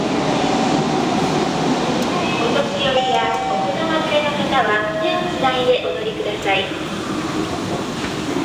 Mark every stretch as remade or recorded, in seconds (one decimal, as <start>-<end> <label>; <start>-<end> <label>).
0.0-8.4 recorded